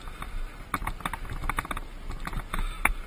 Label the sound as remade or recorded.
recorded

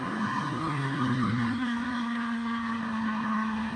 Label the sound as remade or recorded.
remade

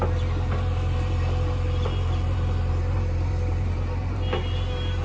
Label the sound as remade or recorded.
remade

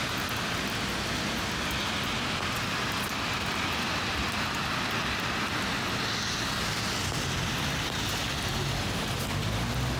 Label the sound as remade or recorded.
recorded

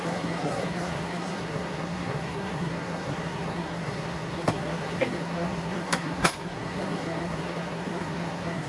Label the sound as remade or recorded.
remade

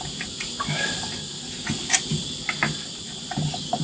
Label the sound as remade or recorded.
recorded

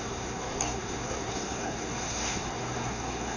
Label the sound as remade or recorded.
remade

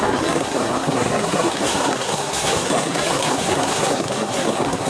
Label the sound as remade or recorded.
remade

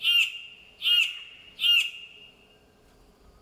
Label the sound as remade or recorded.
recorded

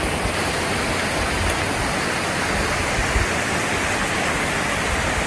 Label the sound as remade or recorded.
recorded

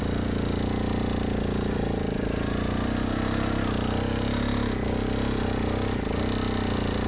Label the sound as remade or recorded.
recorded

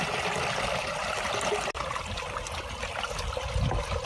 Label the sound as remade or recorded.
recorded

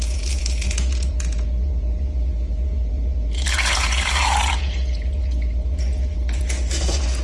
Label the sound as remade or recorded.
remade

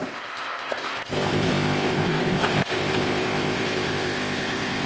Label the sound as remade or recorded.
remade